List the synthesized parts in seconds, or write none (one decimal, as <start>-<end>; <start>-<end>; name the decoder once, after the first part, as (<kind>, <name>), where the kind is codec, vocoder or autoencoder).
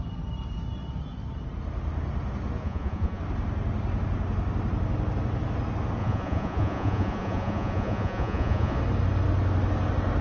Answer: 2.6-3.2 (vocoder, Vocos); 6.0-8.8